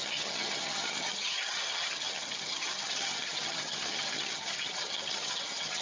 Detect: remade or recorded remade